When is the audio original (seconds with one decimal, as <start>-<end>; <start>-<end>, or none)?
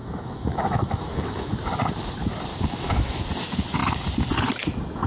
1.5-2.5; 3.1-5.1